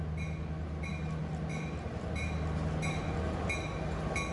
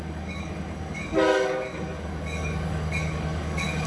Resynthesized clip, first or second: second